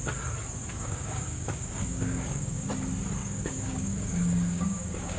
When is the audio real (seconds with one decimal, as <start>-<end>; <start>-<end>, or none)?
0.0-0.7; 2.7-3.2